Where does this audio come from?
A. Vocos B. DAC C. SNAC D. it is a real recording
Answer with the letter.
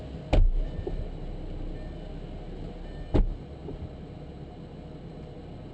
D